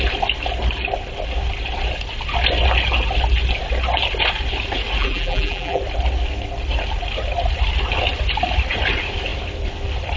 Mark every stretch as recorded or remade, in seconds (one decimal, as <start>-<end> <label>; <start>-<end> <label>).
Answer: 0.0-5.0 recorded; 5.0-5.8 remade; 5.8-10.2 recorded

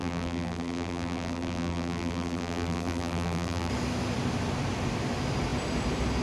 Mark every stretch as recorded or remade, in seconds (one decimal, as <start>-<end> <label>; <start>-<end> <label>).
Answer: 0.0-3.7 remade; 3.7-6.2 recorded

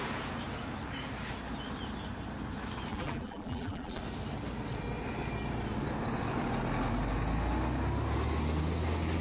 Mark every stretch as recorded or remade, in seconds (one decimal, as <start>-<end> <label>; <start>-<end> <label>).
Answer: 0.0-2.9 recorded; 2.9-4.0 remade; 4.0-9.2 recorded

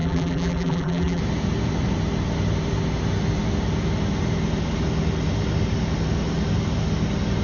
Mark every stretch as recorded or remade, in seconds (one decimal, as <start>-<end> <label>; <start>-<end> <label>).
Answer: 0.0-1.2 remade; 1.2-7.4 recorded

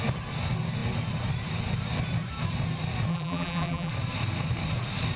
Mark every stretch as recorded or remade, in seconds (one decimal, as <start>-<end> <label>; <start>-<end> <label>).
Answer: 0.0-3.1 recorded; 3.1-3.9 remade; 3.9-5.2 recorded

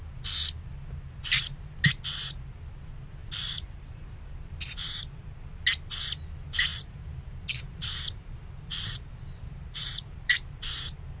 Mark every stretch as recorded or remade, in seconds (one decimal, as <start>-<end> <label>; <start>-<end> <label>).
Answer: 0.0-1.2 recorded; 1.2-1.7 remade; 1.7-3.2 recorded; 3.2-3.9 remade; 3.9-6.7 recorded; 6.7-10.6 remade; 10.6-11.2 recorded

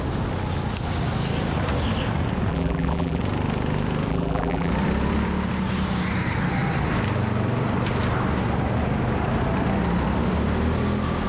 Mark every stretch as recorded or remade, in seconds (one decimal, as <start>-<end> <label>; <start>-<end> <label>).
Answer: 0.0-2.5 recorded; 2.5-3.2 remade; 3.2-4.1 recorded; 4.1-4.7 remade; 4.7-11.3 recorded